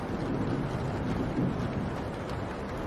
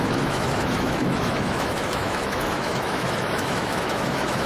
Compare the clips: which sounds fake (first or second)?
second